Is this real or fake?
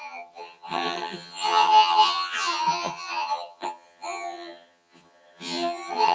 fake